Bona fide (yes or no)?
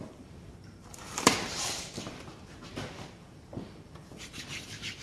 no